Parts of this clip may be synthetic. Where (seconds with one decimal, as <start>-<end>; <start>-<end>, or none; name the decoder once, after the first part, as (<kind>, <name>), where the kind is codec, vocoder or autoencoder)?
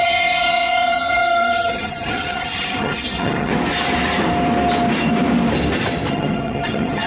0.0-3.5 (vocoder, HiFi-GAN); 6.1-7.1